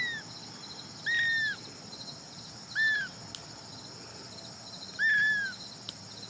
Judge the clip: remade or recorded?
recorded